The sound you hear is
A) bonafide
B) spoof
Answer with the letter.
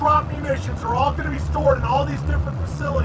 B